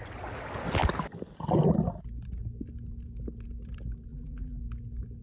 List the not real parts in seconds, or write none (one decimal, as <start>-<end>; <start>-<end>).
4.1-4.6